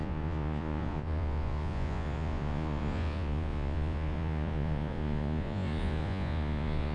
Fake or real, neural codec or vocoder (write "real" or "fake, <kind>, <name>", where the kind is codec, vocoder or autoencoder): fake, vocoder, Vocos